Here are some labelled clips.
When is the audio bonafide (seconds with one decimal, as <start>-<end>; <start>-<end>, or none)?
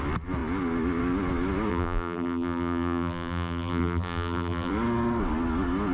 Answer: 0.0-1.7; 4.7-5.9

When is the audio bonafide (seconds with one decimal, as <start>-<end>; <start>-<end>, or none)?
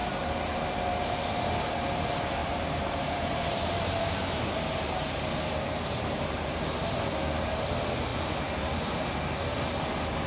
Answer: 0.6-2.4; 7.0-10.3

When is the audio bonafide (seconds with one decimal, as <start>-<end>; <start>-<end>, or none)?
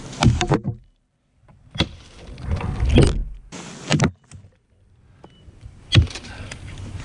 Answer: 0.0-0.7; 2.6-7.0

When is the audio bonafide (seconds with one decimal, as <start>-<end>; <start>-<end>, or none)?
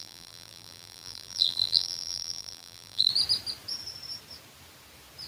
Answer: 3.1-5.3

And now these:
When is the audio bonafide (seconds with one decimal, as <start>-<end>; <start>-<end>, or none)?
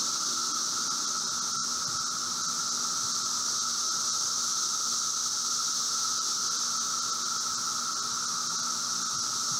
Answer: 0.0-9.6